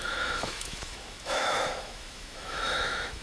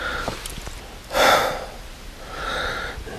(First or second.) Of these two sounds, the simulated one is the first